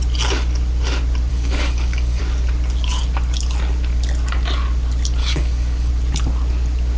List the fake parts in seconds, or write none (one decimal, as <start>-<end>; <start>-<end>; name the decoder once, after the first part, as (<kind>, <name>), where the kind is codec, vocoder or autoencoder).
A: 1.3-2.2 (codec, DAC); 5.2-5.9